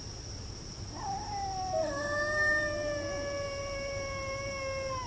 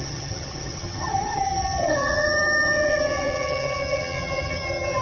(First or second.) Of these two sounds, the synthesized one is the second